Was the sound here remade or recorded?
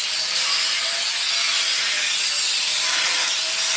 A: recorded